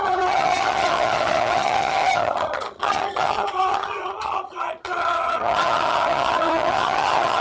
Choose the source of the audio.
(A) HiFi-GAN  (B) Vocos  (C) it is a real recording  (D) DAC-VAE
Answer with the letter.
A